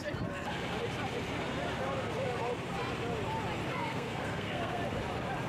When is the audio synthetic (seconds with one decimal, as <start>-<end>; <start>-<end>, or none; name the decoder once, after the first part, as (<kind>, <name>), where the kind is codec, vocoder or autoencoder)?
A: 3.7-4.8 (codec, SNAC)